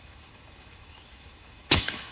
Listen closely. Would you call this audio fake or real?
fake